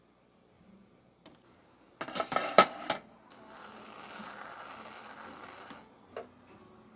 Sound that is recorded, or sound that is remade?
recorded